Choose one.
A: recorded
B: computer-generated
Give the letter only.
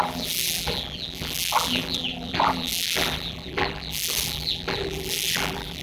B